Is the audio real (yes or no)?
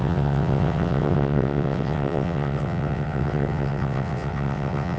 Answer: no